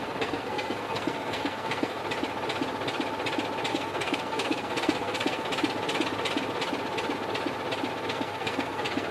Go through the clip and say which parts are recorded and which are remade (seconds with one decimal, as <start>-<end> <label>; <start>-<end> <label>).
0.0-2.0 remade; 2.0-3.7 recorded; 3.7-5.5 remade; 5.5-8.1 recorded; 8.1-9.1 remade